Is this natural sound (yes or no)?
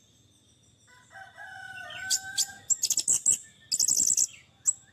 yes